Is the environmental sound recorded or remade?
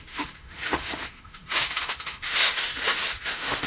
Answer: remade